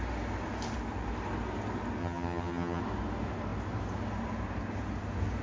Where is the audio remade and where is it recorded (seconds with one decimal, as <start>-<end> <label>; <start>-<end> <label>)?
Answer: 0.0-2.0 recorded; 2.0-2.8 remade; 2.8-5.4 recorded